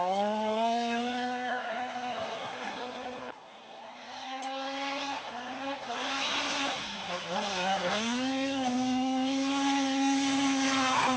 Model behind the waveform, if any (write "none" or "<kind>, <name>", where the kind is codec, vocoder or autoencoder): codec, SNAC